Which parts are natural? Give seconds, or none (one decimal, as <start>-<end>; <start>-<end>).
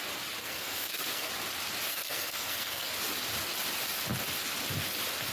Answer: 0.0-0.4; 1.3-1.9; 2.9-5.3